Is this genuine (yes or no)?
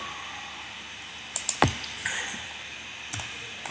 yes